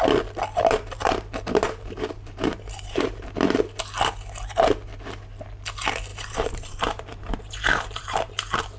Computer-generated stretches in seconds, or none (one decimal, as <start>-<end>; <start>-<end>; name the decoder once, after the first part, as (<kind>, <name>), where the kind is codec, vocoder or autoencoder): 0.5-3.6 (vocoder, BigVGAN v2); 6.1-8.3